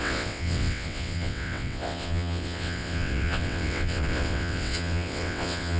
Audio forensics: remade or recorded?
remade